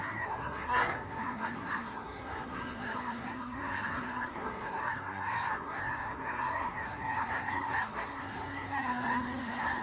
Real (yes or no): no